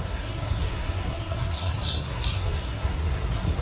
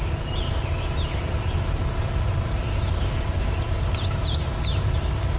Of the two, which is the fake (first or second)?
first